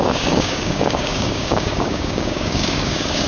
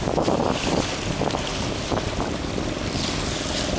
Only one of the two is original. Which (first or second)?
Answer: second